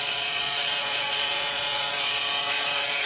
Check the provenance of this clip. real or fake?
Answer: fake